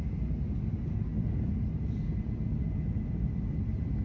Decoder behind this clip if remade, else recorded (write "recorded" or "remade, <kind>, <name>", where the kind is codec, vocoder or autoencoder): recorded